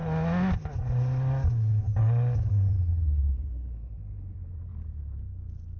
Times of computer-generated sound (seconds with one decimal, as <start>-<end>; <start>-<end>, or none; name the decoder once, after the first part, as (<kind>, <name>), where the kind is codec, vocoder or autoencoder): 2.5-4.7 (vocoder, BigVGAN v2)